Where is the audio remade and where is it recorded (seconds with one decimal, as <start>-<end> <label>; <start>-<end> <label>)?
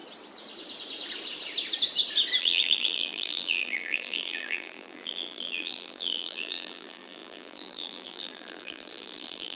0.0-2.4 recorded; 2.4-9.6 remade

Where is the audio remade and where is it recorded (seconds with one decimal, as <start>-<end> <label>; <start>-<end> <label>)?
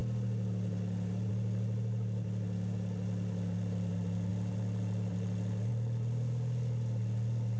0.0-7.6 recorded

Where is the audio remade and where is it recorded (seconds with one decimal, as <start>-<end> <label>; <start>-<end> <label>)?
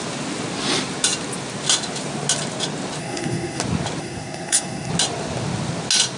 0.0-3.0 recorded; 3.0-3.6 remade; 3.6-4.0 recorded; 4.0-4.9 remade; 4.9-6.2 recorded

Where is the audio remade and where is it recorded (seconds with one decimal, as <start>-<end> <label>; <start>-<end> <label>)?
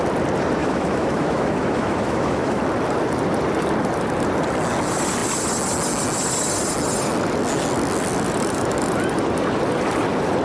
0.0-0.6 recorded; 0.6-2.6 remade; 2.6-10.4 recorded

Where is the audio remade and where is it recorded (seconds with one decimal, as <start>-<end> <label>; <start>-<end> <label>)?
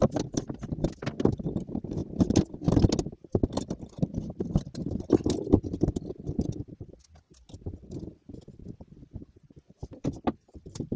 0.0-11.0 recorded